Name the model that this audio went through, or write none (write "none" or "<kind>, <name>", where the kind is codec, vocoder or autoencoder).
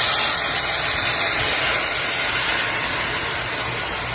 none